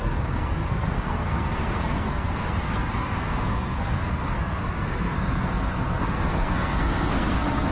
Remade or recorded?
remade